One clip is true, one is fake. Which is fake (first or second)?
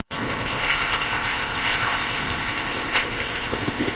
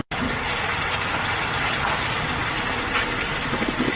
first